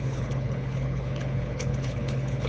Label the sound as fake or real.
fake